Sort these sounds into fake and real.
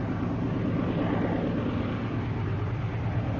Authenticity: real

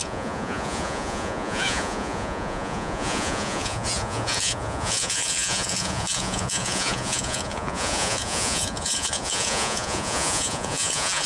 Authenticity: fake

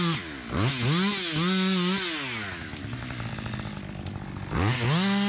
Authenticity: real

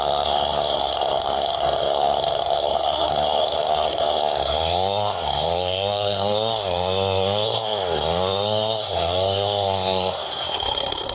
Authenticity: fake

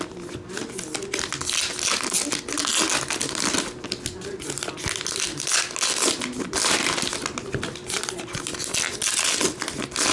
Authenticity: real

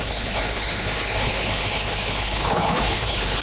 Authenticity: fake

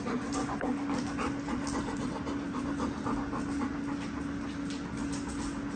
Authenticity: real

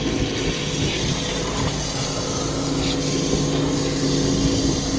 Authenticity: real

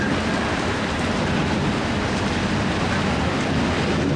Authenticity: real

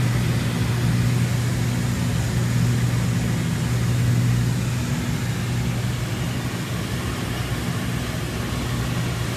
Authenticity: real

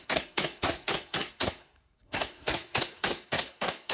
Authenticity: fake